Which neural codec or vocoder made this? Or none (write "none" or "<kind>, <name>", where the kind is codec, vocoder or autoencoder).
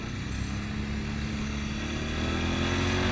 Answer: none